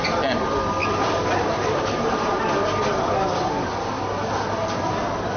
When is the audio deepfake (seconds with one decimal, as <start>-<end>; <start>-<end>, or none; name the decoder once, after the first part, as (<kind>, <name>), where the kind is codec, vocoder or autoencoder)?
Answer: 0.8-2.4 (vocoder, BigVGAN v2)